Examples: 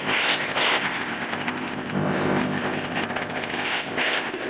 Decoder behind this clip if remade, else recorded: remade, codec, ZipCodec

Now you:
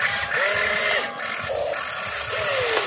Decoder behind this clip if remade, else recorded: recorded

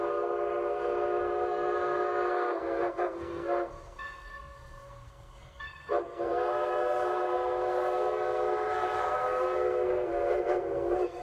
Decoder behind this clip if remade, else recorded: remade, codec, SNAC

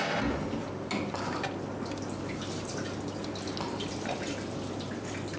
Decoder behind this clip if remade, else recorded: recorded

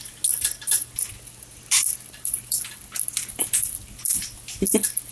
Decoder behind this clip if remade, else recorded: recorded